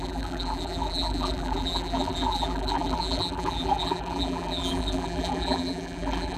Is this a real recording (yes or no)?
no